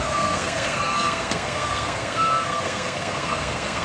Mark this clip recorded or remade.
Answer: remade